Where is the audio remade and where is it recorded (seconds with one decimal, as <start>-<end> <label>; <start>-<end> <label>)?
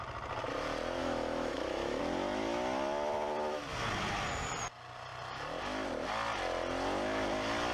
0.0-1.0 recorded; 1.0-2.0 remade; 2.0-7.7 recorded